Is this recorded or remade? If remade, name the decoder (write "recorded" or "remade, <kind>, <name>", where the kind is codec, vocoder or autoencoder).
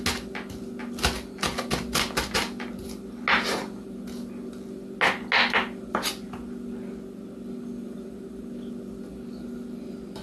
recorded